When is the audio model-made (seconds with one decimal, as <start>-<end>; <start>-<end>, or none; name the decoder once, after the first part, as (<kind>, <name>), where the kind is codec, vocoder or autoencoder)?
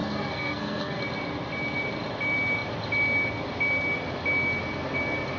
0.0-1.0 (codec, SNAC)